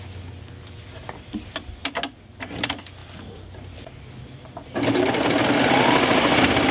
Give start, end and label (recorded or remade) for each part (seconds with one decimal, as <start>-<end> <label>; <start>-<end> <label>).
0.0-3.0 recorded; 3.0-5.5 remade; 5.5-6.7 recorded